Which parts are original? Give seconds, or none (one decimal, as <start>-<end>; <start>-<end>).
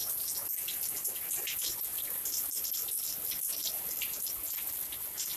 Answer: 0.0-1.9; 4.3-5.4